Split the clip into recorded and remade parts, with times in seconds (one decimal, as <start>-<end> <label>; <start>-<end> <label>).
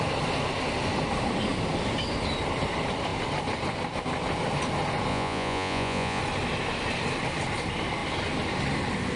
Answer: 0.0-5.1 recorded; 5.1-6.2 remade; 6.2-9.2 recorded